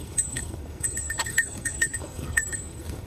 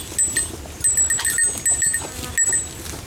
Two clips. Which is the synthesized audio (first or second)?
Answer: first